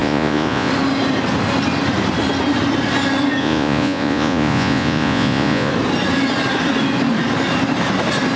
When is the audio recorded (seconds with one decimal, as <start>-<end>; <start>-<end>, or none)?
0.7-3.4; 5.7-8.4